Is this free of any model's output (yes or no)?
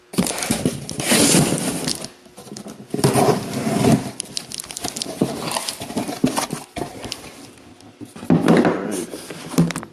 no